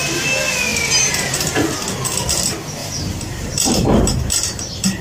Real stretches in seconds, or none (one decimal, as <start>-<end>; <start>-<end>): 0.0-0.7; 1.4-2.8

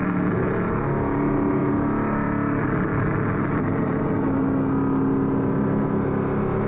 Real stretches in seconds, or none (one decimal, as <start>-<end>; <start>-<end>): 0.0-1.6; 4.0-6.7

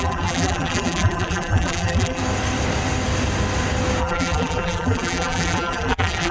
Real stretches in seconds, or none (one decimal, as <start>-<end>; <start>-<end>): 2.2-4.0

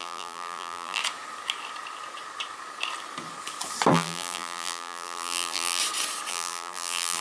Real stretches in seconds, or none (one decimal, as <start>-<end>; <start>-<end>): 1.0-3.9; 5.8-6.3

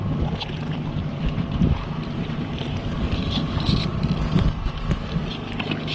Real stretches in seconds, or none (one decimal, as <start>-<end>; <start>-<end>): 0.0-1.0; 2.8-5.9